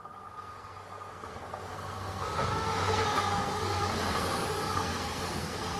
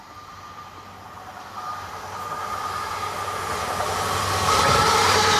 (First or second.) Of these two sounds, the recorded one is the second